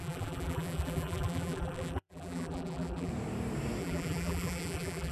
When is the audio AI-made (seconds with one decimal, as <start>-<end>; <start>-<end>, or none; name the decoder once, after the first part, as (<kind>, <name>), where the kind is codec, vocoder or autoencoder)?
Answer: 0.0-3.1 (vocoder, BigVGAN v2); 3.8-5.1